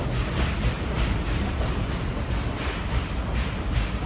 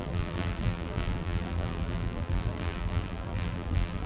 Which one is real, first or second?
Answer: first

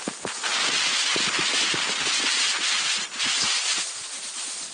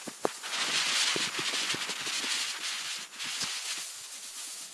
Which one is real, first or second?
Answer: first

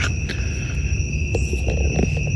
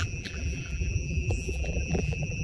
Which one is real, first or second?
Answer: first